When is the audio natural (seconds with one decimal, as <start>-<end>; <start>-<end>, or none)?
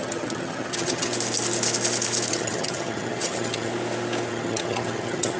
1.1-2.3; 3.7-4.3